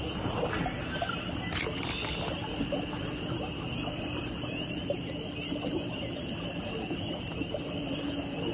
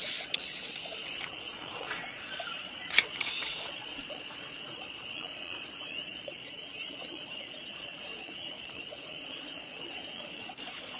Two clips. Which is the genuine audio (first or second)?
first